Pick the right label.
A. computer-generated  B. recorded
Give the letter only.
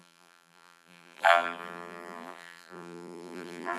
A